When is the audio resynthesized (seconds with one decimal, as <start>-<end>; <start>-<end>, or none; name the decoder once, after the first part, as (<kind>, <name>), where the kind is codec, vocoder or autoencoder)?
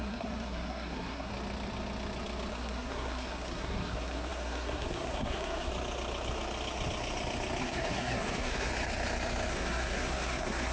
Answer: 0.0-1.3 (codec, SNAC); 2.5-5.7; 7.6-8.7; 9.5-10.7